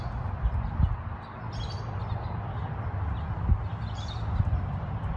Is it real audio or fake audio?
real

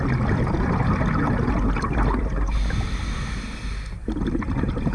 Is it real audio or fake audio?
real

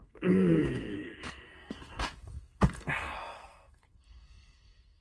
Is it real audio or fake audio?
fake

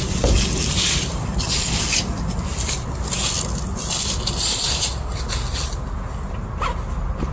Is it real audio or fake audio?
real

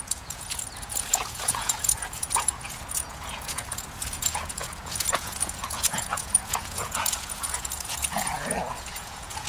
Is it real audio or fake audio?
fake